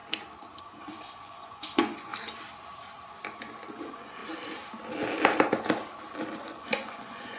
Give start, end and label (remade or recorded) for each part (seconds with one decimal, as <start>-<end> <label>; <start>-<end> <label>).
0.0-0.6 recorded; 0.6-2.1 remade; 2.1-3.7 recorded; 3.7-4.2 remade; 4.2-6.4 recorded; 6.4-7.4 remade